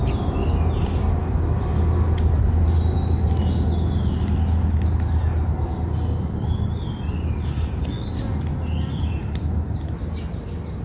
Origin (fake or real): real